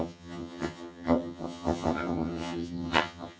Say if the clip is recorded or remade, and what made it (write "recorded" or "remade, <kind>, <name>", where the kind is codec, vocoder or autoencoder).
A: remade, vocoder, HiFi-GAN